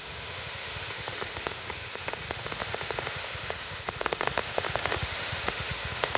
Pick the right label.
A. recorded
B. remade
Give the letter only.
B